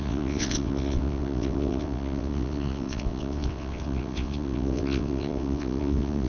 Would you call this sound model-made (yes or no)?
yes